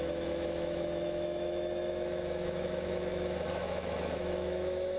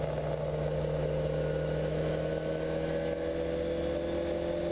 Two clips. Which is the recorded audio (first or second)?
second